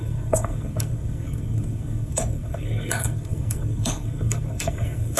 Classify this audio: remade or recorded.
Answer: remade